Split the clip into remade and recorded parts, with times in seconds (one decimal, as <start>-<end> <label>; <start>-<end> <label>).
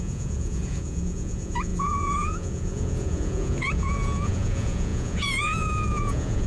0.0-6.5 remade